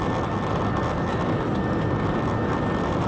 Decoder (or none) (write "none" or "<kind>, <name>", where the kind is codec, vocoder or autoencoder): none